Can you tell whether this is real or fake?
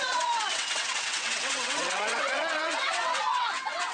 fake